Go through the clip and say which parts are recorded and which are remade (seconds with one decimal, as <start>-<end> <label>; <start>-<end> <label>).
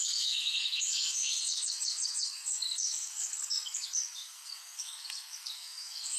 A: 0.0-6.2 remade